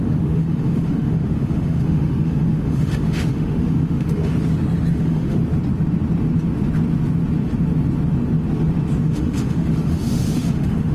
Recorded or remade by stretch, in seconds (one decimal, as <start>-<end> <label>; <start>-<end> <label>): 0.0-4.3 remade; 4.3-4.9 recorded; 4.9-5.4 remade; 5.4-9.0 recorded; 9.0-10.9 remade